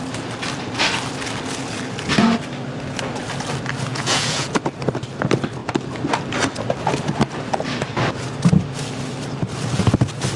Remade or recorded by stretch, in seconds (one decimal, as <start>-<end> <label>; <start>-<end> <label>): 0.0-3.9 recorded; 3.9-4.6 remade; 4.6-10.4 recorded